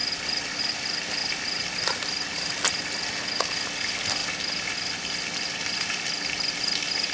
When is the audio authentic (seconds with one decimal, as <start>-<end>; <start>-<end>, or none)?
0.0-7.1